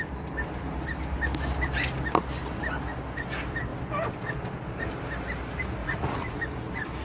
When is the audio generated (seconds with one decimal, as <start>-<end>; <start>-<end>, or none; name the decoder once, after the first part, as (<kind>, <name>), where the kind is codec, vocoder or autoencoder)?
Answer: 5.8-6.4 (vocoder, Vocos)